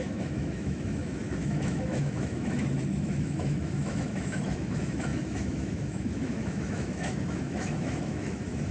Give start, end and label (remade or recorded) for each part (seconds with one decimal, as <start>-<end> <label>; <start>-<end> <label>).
0.0-8.7 remade